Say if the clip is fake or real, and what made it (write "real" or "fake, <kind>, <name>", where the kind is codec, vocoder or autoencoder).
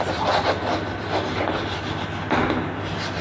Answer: real